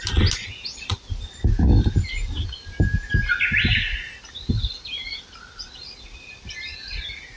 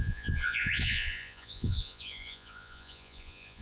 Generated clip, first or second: second